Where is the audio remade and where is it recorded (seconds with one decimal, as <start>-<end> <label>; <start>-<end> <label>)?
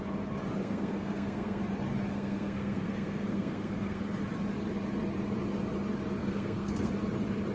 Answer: 0.0-0.6 recorded; 0.6-1.6 remade; 1.6-2.1 recorded; 2.1-4.0 remade; 4.0-6.2 recorded; 6.2-6.9 remade; 6.9-7.5 recorded